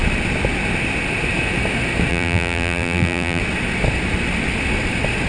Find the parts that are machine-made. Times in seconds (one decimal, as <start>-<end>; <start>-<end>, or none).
2.1-3.4